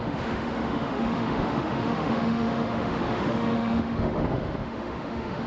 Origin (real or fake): fake